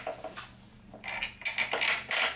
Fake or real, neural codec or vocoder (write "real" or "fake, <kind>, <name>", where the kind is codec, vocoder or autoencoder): real